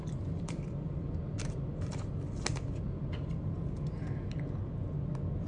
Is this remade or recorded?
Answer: recorded